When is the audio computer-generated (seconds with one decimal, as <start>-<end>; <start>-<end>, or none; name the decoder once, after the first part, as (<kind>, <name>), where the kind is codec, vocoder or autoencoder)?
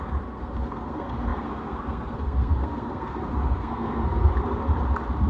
0.0-4.3 (codec, SNAC)